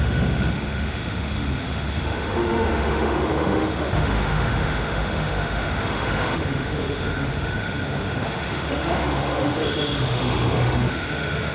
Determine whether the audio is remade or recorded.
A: remade